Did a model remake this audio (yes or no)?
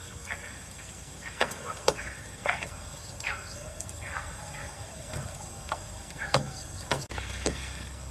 yes